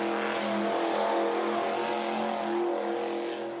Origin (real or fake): real